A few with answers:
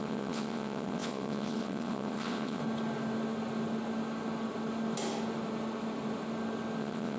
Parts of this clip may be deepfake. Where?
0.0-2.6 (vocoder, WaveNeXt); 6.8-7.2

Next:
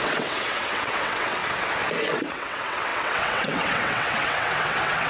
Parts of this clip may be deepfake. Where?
0.0-1.4 (vocoder, WaveNeXt); 2.1-5.1

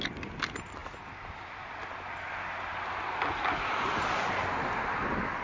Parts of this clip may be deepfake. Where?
none

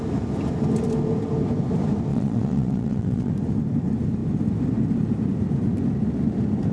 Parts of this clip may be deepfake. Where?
2.1-3.3 (vocoder, WaveNeXt)

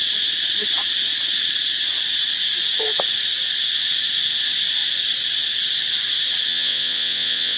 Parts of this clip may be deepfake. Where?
6.5-7.6 (vocoder, WaveNeXt)

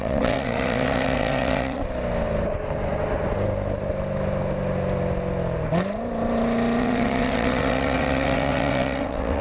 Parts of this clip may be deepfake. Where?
0.0-1.8 (vocoder, WaveNeXt); 6.8-9.4

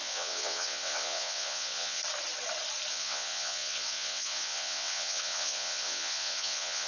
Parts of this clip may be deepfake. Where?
0.0-2.0 (vocoder, WaveNeXt); 2.9-6.9